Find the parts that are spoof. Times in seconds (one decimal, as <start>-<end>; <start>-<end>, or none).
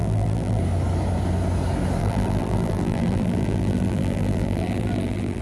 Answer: 0.0-0.6; 2.0-5.4